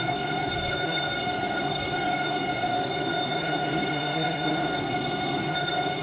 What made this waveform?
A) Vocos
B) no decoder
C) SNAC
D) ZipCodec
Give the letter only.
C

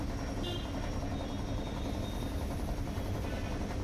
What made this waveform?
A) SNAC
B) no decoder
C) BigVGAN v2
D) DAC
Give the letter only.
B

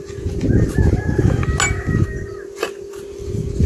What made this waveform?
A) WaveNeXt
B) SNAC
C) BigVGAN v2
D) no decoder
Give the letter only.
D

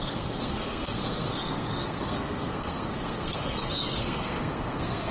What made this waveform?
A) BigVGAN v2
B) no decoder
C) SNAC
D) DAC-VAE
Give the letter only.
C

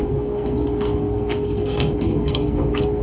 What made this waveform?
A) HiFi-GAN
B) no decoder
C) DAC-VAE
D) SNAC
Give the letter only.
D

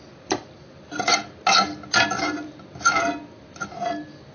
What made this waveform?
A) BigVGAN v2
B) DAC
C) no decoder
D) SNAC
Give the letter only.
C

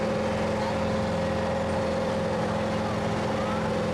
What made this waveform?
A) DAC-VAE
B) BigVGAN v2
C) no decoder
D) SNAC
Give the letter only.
C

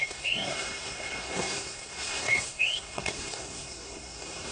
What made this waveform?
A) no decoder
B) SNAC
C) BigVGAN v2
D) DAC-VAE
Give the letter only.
B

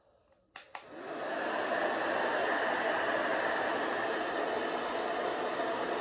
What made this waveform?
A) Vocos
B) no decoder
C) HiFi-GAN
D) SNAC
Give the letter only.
B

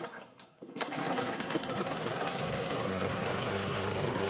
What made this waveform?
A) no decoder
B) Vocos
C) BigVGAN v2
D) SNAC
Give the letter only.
D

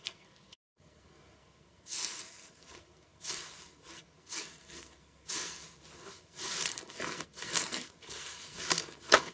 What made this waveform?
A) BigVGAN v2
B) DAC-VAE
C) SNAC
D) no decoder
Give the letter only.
C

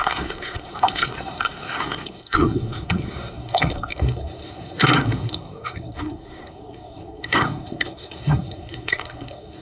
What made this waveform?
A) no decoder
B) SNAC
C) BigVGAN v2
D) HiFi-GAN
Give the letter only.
B